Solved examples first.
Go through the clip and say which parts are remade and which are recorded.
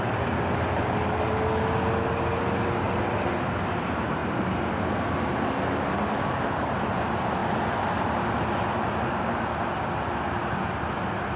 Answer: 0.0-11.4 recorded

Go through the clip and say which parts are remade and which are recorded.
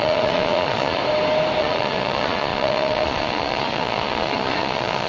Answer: 0.0-1.0 remade; 1.0-1.6 recorded; 1.6-5.1 remade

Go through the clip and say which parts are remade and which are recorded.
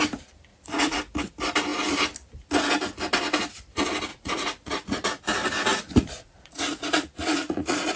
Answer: 0.0-0.5 recorded; 0.5-1.0 remade; 1.0-4.1 recorded; 4.1-5.1 remade; 5.1-5.7 recorded; 5.7-8.0 remade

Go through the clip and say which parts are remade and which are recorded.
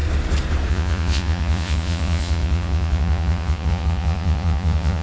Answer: 0.0-0.7 recorded; 0.7-5.0 remade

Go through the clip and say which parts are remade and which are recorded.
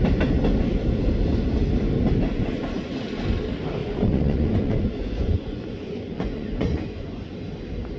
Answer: 0.0-2.3 recorded; 2.3-2.9 remade; 2.9-3.8 recorded; 3.8-7.3 remade; 7.3-8.0 recorded